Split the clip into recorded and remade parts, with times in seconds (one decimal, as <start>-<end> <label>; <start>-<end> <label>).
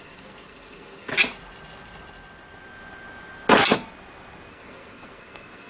0.0-1.1 remade; 1.1-4.5 recorded; 4.5-5.7 remade